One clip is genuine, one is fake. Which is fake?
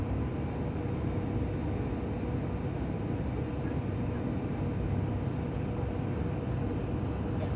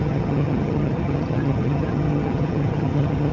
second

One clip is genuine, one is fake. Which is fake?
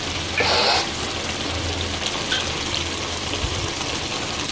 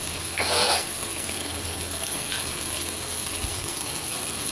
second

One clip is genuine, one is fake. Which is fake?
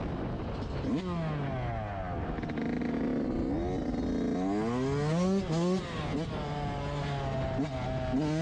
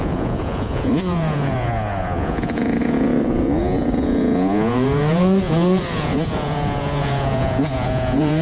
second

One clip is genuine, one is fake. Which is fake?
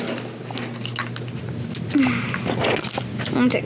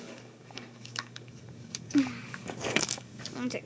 second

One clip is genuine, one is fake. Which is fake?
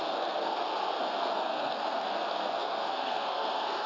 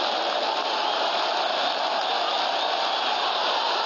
first